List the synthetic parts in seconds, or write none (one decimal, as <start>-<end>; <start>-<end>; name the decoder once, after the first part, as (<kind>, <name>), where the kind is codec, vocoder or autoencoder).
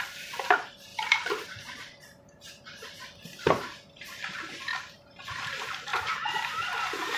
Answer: 0.0-7.2 (vocoder, BigVGAN v2)